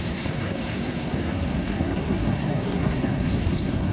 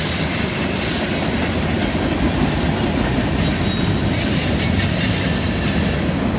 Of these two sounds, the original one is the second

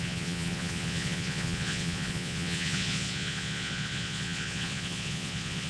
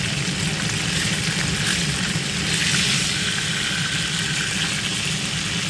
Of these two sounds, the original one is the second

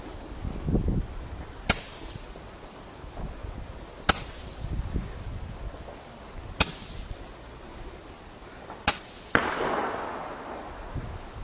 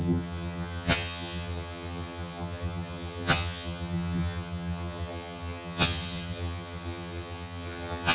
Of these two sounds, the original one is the first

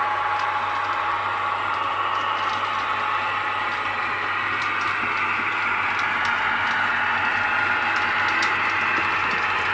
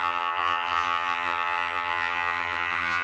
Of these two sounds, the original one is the first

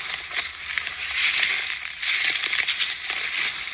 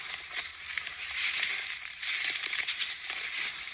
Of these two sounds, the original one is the first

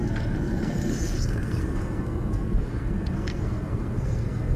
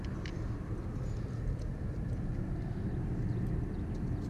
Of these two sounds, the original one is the second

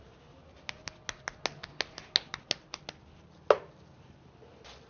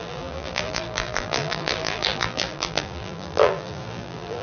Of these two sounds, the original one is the first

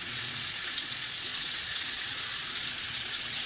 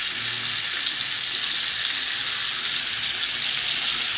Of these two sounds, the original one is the second